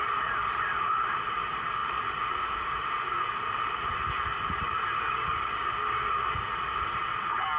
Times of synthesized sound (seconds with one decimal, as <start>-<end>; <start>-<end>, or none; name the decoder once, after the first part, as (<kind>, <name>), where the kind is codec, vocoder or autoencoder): none